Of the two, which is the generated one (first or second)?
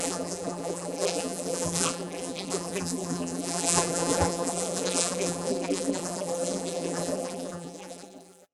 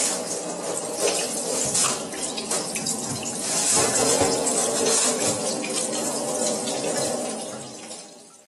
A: first